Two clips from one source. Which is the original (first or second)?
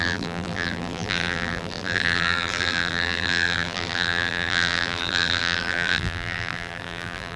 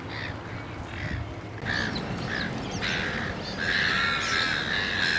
second